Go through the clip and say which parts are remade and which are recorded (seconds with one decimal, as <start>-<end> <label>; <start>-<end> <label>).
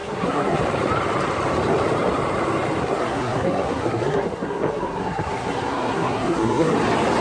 0.0-0.6 remade; 0.6-2.8 recorded; 2.8-6.7 remade; 6.7-7.2 recorded